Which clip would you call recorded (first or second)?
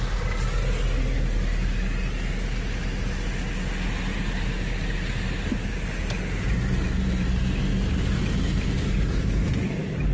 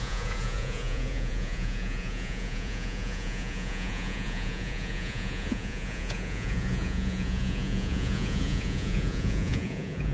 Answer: first